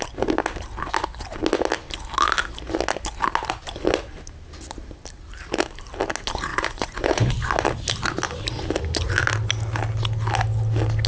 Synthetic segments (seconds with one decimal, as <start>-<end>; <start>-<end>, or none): 6.5-7.3